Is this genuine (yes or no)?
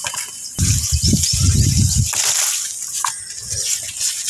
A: yes